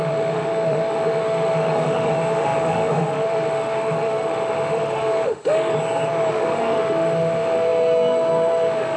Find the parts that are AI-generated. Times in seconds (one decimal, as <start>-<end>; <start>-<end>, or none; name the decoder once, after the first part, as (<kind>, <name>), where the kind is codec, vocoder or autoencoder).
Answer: 0.0-5.7 (autoencoder, DAC-VAE); 6.3-9.0